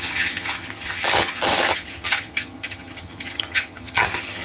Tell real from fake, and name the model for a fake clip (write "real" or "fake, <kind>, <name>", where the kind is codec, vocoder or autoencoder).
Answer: fake, vocoder, HiFi-GAN